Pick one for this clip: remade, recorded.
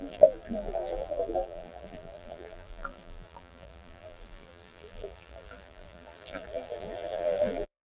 remade